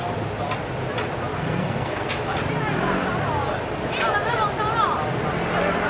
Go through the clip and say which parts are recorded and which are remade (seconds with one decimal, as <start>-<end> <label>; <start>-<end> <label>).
0.0-1.3 recorded; 1.3-2.1 remade; 2.1-5.9 recorded